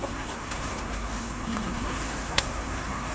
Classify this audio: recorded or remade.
remade